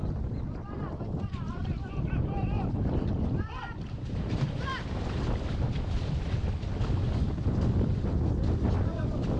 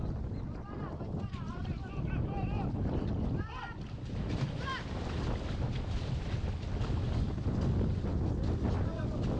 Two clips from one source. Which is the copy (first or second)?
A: first